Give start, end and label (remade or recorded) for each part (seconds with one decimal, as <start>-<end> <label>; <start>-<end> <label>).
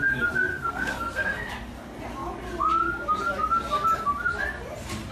0.0-0.5 recorded; 0.5-1.5 remade; 1.5-5.1 recorded